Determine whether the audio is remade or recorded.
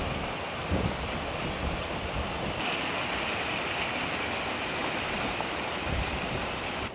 recorded